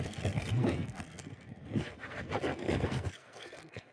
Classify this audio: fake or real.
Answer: fake